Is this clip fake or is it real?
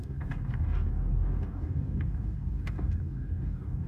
fake